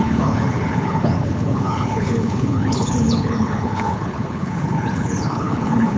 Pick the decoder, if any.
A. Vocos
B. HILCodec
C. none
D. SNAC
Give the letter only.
B